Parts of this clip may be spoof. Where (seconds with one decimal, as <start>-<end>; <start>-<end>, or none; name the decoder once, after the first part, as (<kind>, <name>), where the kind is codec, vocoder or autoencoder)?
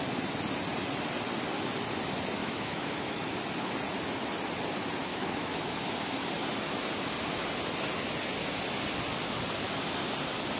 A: 2.4-3.3 (autoencoder, DAC-VAE); 5.1-5.9